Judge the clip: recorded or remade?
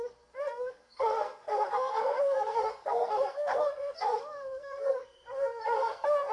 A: remade